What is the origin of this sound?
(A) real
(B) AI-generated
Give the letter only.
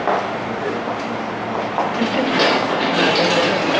A